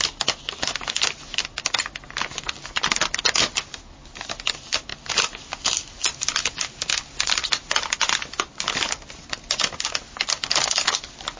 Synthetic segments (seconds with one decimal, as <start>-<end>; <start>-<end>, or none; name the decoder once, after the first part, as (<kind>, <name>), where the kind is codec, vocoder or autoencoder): none

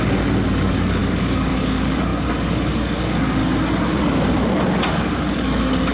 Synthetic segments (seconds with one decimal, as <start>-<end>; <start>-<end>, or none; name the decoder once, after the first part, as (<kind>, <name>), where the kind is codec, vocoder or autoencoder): 0.0-3.4 (codec, DAC); 4.0-4.4; 5.2-5.9

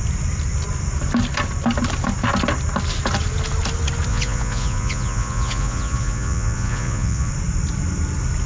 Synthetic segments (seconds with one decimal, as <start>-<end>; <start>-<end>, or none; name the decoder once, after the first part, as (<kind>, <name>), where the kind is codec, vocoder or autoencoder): 4.1-7.3 (vocoder, Vocos)

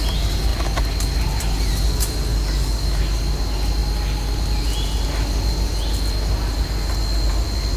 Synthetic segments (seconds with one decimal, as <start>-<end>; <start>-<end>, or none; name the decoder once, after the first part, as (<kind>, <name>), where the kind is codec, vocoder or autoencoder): 2.3-3.0 (codec, DAC)

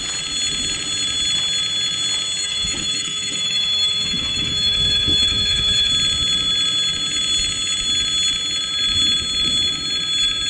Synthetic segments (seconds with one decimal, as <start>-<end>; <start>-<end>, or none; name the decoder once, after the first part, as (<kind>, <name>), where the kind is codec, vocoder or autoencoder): 2.4-5.9 (autoencoder, DAC-VAE)

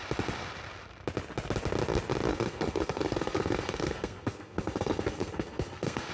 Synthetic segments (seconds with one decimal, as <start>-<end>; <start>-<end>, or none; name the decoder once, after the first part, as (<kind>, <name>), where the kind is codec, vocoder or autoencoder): 2.3-6.1 (codec, SNAC)

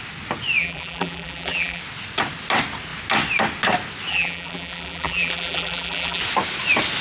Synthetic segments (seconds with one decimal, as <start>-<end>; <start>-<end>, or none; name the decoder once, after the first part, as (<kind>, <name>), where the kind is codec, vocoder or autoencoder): 0.6-1.8 (vocoder, BigVGAN v2); 4.1-6.2

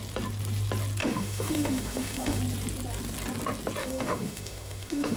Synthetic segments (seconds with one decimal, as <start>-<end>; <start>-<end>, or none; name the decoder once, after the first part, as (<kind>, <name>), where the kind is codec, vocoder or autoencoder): 1.0-2.4 (autoencoder, DAC-VAE); 3.8-5.2